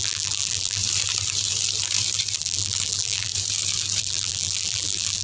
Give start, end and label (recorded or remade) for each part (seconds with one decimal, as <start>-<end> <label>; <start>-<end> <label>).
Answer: 0.0-0.8 remade; 0.8-2.4 recorded; 2.4-3.3 remade; 3.3-4.0 recorded; 4.0-5.2 remade